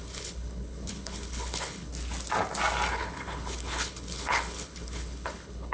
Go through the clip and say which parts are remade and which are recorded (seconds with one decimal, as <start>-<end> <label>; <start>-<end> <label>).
0.0-1.9 remade; 1.9-2.9 recorded; 2.9-5.7 remade